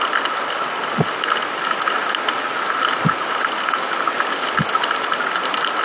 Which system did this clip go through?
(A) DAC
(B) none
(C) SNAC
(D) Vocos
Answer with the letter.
B